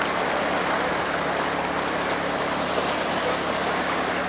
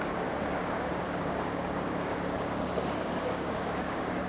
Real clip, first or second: first